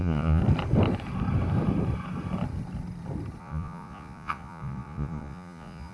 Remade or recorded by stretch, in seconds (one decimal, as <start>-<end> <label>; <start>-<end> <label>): 0.0-0.4 remade; 0.4-3.4 recorded; 3.4-5.9 remade